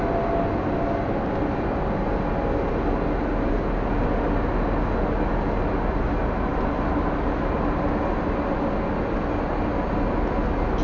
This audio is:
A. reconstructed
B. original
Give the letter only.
B